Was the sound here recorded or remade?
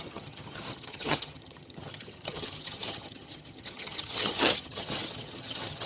remade